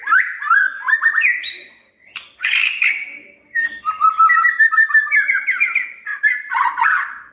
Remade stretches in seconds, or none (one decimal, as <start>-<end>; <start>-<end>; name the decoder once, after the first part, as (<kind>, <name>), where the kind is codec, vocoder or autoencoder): 6.1-7.3 (vocoder, Vocos)